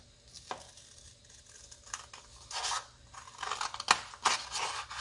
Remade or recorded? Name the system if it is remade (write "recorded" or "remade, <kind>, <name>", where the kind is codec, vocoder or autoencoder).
recorded